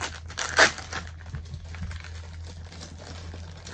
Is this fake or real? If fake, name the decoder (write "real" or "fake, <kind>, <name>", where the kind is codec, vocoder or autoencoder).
real